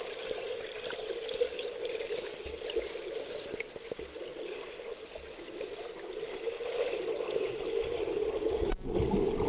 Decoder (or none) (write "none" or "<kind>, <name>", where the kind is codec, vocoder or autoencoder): none